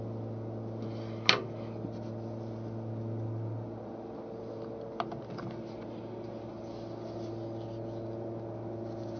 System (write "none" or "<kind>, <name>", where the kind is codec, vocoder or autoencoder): none